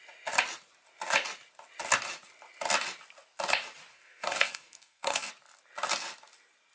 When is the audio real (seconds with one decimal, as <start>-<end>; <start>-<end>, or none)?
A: 0.0-3.9; 5.3-6.7